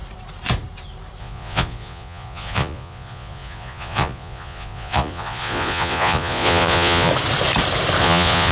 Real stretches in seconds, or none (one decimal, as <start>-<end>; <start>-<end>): 0.0-1.2; 7.1-8.0